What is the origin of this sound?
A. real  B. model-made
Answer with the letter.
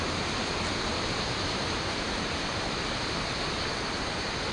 B